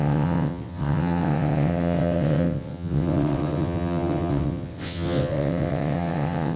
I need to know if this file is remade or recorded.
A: remade